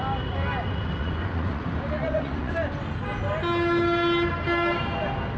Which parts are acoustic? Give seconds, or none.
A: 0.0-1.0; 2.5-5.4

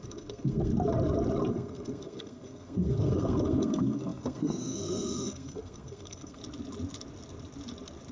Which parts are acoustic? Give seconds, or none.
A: 0.7-1.5; 6.4-8.1

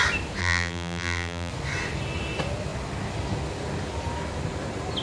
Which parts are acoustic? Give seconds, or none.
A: 0.0-0.4; 1.5-5.0

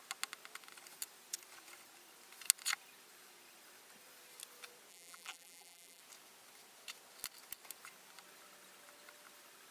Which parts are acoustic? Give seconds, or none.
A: 0.0-4.9; 6.0-9.7

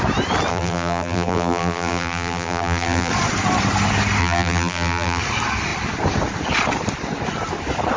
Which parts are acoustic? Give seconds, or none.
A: 0.0-0.5; 3.1-4.2; 5.2-8.0